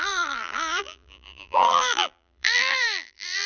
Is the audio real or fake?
fake